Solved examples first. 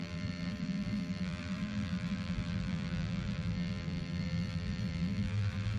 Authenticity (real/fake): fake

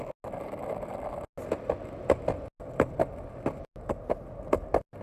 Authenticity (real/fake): real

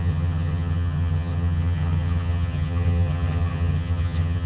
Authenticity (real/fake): fake